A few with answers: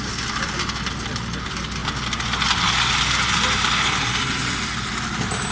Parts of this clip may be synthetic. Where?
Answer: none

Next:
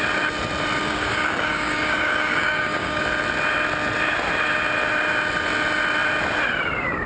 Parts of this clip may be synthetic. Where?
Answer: 0.8-3.0

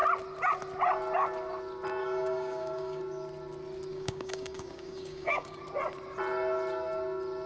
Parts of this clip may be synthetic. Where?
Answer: 2.0-3.0; 3.9-5.6

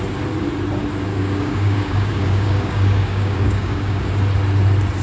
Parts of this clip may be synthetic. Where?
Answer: 1.1-4.1